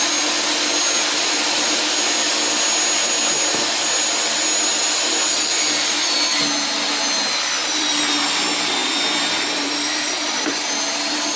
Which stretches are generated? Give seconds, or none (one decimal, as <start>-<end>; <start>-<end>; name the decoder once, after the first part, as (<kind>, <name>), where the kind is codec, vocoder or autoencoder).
8.8-11.4 (vocoder, BigVGAN v2)